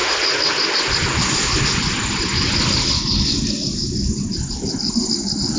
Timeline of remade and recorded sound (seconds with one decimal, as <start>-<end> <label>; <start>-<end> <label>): 0.0-5.6 recorded

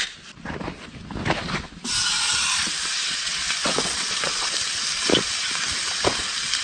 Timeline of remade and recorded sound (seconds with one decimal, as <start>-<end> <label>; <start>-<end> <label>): 0.0-2.9 recorded; 2.9-4.5 remade; 4.5-6.6 recorded